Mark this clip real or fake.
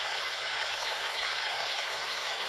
fake